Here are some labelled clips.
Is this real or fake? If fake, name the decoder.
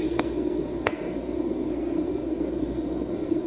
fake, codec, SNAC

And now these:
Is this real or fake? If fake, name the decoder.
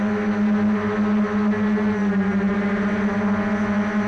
real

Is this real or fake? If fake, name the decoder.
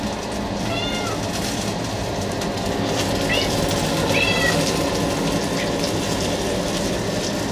real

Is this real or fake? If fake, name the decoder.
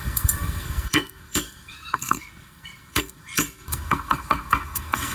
fake, codec, SNAC